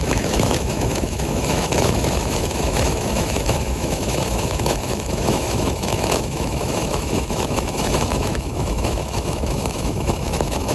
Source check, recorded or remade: remade